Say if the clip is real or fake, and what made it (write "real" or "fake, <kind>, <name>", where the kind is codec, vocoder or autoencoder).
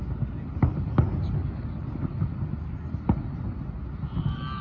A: real